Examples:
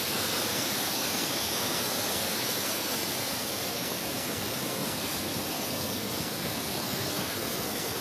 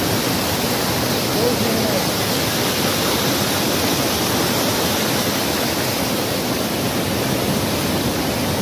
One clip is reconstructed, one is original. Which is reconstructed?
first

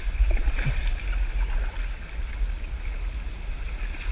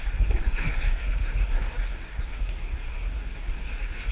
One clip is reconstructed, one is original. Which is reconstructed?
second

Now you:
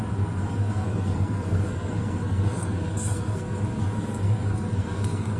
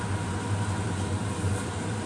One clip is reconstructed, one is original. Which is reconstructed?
first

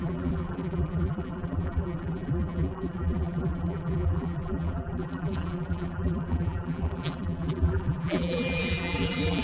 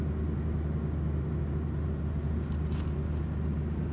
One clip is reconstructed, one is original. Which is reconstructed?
first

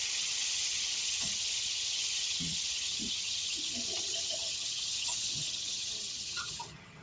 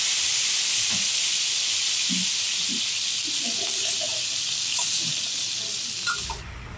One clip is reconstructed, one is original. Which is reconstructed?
first